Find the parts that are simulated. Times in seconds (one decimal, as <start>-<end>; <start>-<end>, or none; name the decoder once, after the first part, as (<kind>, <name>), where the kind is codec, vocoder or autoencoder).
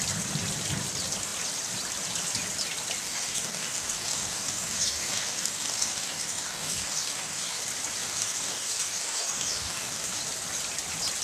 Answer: 3.0-7.6 (codec, DAC); 8.0-10.2